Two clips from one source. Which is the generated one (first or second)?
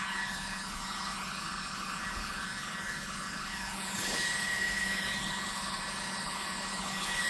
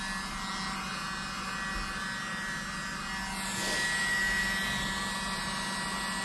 first